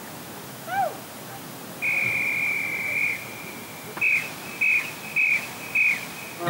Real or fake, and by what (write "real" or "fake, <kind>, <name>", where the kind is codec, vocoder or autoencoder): real